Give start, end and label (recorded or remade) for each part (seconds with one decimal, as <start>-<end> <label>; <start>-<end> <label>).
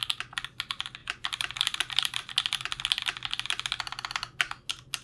0.0-1.0 recorded; 1.0-2.2 remade; 2.2-5.0 recorded